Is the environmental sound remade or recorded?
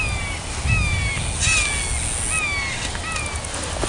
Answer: recorded